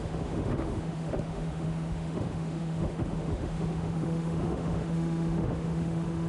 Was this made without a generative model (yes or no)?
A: no